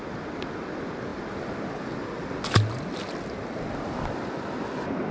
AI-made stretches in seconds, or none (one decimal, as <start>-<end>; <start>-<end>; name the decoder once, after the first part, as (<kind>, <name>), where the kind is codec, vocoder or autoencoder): none